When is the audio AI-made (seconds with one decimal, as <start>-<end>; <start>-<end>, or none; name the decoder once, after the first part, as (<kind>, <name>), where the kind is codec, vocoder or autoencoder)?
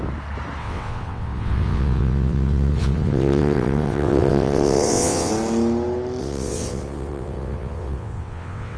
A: 0.6-5.3 (vocoder, WaveNeXt); 6.2-8.8